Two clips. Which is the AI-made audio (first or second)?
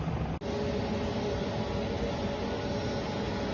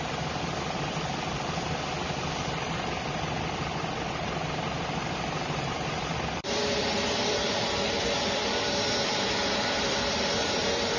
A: second